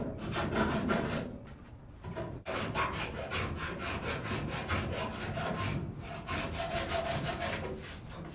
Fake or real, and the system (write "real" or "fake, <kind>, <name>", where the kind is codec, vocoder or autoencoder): fake, vocoder, BigVGAN v2